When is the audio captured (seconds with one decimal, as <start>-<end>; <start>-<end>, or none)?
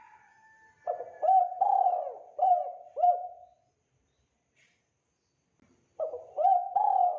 0.0-1.5; 3.7-7.2